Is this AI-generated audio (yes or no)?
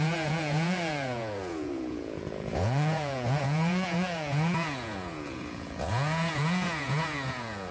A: yes